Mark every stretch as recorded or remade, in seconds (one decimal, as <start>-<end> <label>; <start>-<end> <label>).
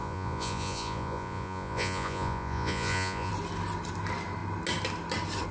0.0-3.3 remade; 3.3-5.5 recorded